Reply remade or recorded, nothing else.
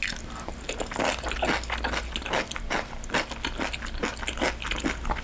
recorded